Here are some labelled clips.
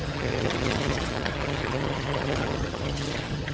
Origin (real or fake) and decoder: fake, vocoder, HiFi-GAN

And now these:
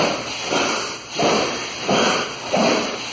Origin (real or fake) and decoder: real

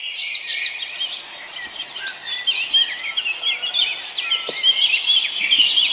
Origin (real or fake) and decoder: real